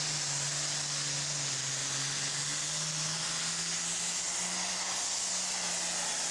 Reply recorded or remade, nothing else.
recorded